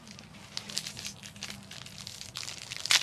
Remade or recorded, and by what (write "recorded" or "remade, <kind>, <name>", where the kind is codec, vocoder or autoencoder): recorded